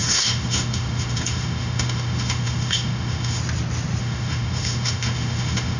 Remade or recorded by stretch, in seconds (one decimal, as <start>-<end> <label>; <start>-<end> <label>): 0.0-3.4 remade; 3.4-4.0 recorded; 4.0-5.8 remade